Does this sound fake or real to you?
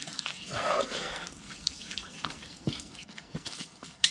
fake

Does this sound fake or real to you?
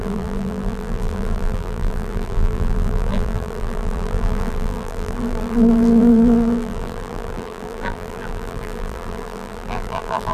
fake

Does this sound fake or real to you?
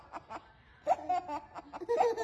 real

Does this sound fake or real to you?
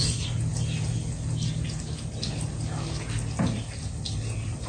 real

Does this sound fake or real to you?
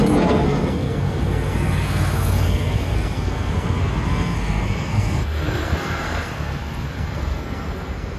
fake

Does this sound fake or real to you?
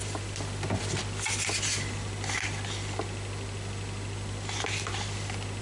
real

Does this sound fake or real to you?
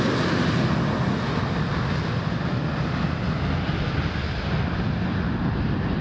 real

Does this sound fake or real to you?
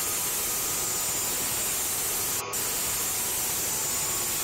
real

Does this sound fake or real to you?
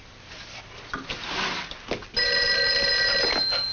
real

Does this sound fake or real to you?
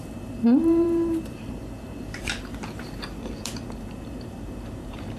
fake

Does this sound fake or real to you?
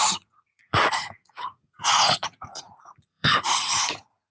fake